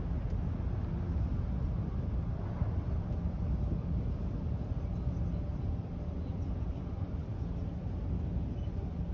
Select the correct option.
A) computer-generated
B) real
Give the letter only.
B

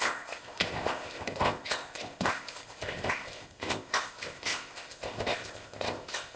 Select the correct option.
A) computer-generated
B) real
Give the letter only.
A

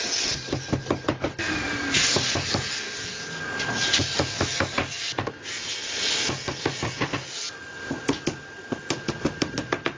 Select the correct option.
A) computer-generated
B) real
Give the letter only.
B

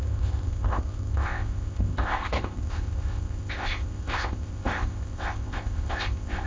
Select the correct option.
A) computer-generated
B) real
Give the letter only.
A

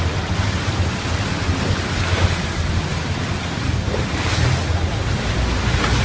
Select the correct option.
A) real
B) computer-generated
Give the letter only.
A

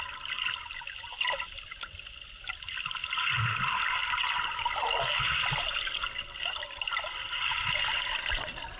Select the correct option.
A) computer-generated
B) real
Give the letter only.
B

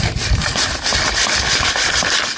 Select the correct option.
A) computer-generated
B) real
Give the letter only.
B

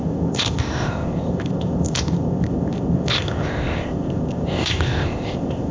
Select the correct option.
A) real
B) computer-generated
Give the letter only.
B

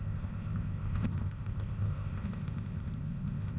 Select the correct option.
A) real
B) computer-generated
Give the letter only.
B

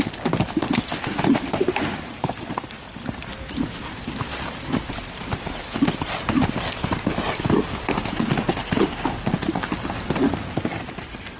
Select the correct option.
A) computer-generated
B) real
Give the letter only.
B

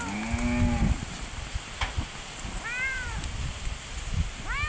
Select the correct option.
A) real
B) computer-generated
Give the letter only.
A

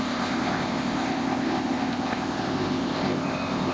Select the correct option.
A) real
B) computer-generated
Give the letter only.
B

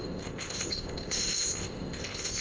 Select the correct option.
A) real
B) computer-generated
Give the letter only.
B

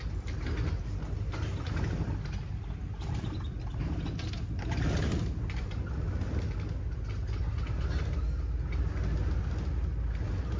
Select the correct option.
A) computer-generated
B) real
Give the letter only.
B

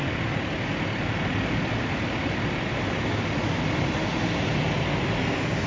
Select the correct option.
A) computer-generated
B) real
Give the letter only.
B